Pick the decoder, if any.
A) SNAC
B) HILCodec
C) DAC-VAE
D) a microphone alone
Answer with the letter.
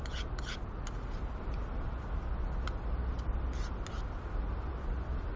D